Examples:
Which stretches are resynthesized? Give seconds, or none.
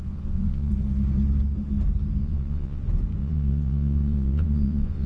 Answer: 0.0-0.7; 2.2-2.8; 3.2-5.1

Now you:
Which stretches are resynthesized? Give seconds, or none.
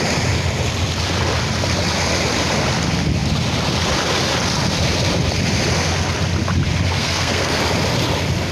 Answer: 7.0-7.6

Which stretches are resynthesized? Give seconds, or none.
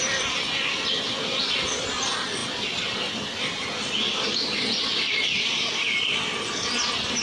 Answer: none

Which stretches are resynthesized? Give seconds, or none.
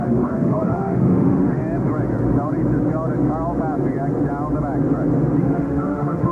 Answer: 0.0-1.6; 5.4-6.3